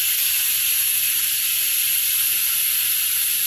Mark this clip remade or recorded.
recorded